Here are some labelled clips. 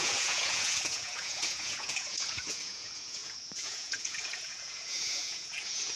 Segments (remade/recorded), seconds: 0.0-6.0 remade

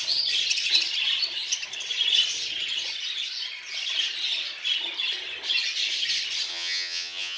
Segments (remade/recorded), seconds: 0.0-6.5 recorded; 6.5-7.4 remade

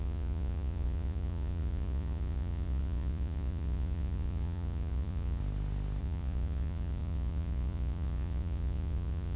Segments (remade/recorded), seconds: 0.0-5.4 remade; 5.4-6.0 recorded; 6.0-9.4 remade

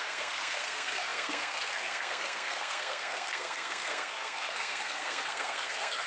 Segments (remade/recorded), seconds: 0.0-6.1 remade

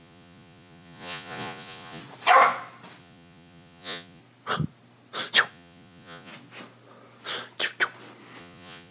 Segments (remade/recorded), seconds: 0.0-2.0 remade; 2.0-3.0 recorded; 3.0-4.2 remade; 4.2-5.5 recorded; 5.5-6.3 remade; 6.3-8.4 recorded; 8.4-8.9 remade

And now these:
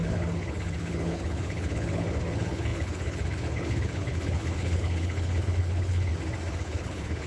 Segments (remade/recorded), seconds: 0.0-6.1 remade; 6.1-6.6 recorded; 6.6-7.3 remade